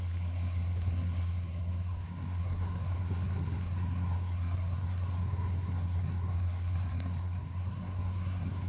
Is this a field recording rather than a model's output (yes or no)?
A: no